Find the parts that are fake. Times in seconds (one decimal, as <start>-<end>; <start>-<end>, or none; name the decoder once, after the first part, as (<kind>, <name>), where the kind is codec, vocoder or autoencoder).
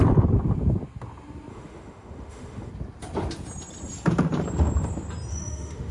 1.5-2.7 (autoencoder, DAC-VAE); 5.3-5.9